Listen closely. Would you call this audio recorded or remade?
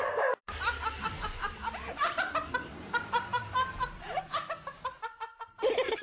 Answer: remade